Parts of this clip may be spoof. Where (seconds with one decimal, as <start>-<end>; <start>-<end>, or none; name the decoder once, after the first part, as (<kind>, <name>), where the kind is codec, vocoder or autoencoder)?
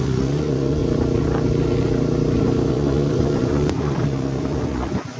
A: 0.0-0.8 (vocoder, Vocos); 2.7-5.2